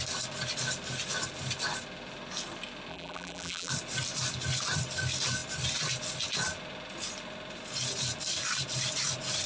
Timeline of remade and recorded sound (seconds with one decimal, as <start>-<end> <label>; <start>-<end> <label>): 0.0-2.9 recorded; 2.9-3.7 remade; 3.7-9.5 recorded